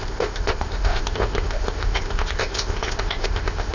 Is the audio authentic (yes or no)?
no